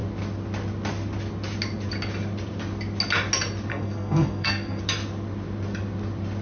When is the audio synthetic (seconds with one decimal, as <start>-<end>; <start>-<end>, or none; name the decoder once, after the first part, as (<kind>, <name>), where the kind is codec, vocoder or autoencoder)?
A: 3.7-4.8 (codec, SNAC)